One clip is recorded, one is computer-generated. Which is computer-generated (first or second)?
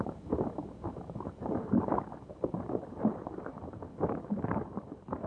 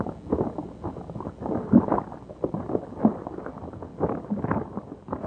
first